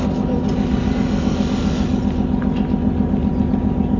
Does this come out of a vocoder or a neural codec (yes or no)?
no